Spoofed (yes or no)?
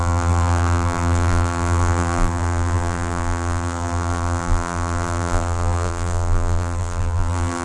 yes